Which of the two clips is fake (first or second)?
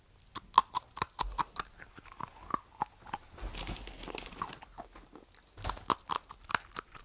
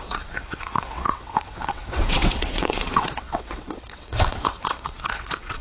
second